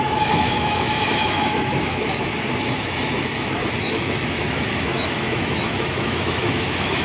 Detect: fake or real fake